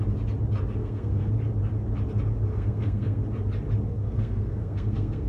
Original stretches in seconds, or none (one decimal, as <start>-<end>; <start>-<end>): 0.0-0.8; 1.3-2.5; 3.2-3.9